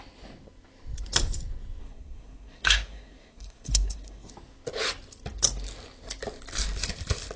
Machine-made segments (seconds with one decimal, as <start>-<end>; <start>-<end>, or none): 1.8-4.3